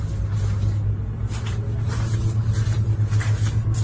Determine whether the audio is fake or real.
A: real